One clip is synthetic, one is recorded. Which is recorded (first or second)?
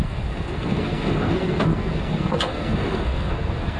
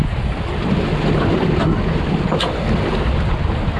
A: second